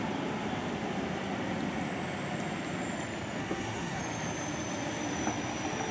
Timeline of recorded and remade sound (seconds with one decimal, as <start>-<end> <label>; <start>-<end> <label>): 0.0-3.4 recorded; 3.4-4.0 remade; 4.0-5.9 recorded